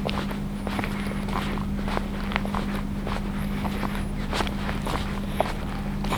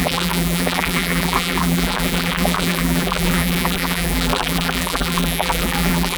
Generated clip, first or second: second